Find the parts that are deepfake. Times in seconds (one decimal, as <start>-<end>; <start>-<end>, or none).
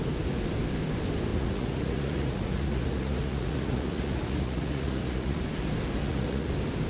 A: 1.3-5.4; 6.0-6.5